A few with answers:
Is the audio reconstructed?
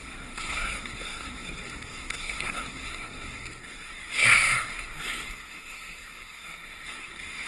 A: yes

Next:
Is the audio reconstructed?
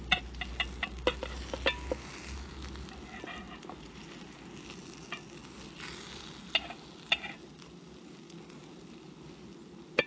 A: no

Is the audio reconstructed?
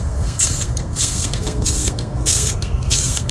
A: yes